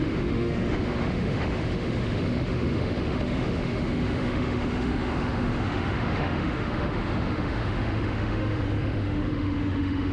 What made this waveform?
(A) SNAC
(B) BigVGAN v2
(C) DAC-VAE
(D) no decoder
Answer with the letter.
C